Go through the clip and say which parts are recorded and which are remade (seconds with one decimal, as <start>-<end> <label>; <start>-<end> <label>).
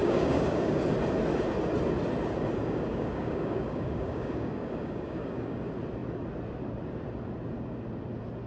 0.0-0.8 remade; 0.8-2.6 recorded; 2.6-5.6 remade; 5.6-8.5 recorded